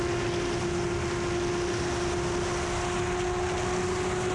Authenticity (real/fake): real